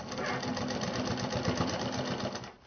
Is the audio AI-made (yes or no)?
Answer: no